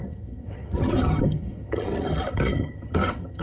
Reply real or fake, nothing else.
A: fake